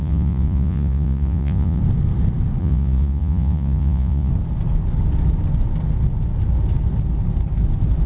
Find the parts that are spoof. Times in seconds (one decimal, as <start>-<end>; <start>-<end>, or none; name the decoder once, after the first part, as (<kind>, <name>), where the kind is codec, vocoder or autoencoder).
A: 0.0-1.8 (vocoder, Vocos); 2.6-4.3